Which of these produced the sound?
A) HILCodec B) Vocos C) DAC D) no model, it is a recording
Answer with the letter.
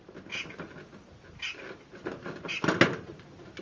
D